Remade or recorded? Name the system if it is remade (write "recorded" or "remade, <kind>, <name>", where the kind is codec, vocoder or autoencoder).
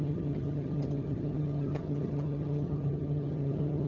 remade, vocoder, HiFi-GAN